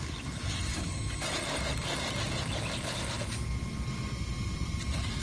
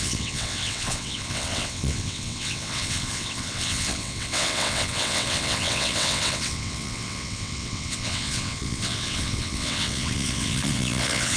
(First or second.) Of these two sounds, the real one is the first